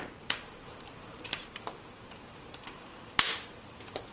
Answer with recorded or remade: remade